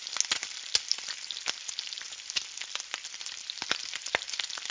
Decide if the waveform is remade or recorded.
recorded